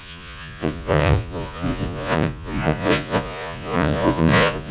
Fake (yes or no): yes